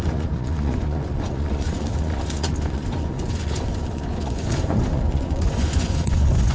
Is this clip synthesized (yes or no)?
yes